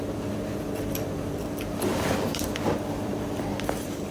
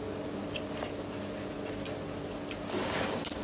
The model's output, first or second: first